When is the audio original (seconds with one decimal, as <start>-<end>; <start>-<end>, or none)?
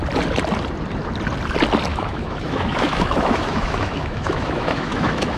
0.0-1.9